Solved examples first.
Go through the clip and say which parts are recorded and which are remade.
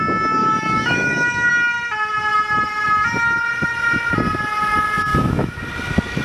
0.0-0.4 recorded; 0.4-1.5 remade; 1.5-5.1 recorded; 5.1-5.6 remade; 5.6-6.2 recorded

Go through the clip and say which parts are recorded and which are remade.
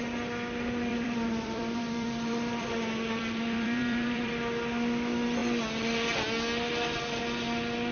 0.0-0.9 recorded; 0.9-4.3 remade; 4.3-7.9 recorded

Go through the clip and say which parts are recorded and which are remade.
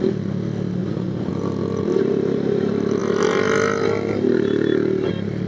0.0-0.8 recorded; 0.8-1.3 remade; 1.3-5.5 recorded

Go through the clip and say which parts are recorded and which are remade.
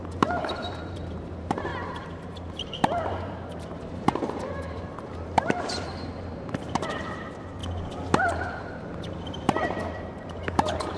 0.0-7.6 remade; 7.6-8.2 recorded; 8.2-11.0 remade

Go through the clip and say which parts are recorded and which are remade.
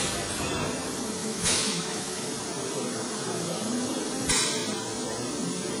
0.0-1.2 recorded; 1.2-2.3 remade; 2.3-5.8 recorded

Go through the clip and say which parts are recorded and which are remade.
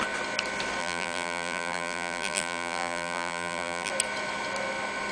0.0-0.8 recorded; 0.8-3.9 remade; 3.9-5.1 recorded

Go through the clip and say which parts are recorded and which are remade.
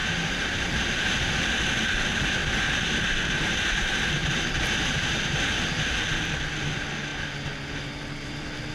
0.0-1.2 remade; 1.2-2.4 recorded; 2.4-3.0 remade; 3.0-4.2 recorded; 4.2-5.5 remade; 5.5-8.7 recorded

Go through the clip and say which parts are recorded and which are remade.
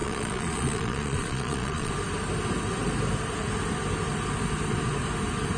0.0-1.9 remade; 1.9-5.6 recorded